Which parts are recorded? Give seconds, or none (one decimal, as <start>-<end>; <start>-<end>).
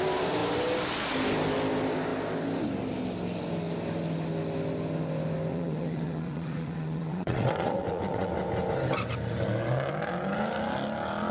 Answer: 0.0-5.5; 8.3-11.3